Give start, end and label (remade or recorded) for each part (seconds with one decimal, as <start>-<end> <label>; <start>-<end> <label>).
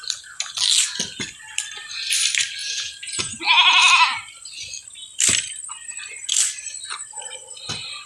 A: 0.0-2.6 recorded; 2.6-3.4 remade; 3.4-8.1 recorded